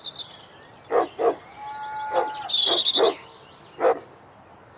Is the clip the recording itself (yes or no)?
yes